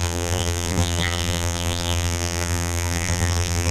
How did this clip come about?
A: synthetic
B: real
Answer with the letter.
A